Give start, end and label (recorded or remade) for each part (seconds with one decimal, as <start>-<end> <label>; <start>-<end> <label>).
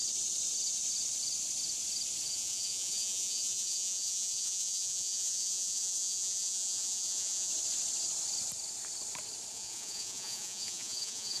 0.0-2.3 recorded; 2.3-7.5 remade; 7.5-9.5 recorded; 9.5-11.4 remade